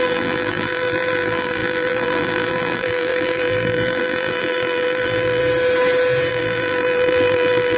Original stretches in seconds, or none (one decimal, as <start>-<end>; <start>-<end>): 5.4-6.3